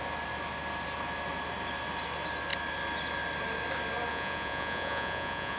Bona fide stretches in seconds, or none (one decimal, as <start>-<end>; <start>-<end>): 0.0-4.1